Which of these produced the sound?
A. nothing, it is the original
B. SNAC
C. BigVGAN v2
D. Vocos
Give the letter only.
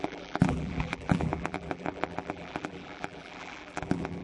C